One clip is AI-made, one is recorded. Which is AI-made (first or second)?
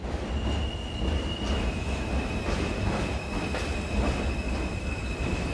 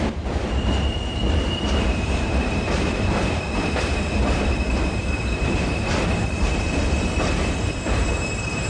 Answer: second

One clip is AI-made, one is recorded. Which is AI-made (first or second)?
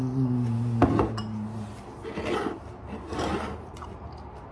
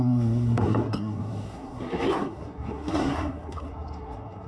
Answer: second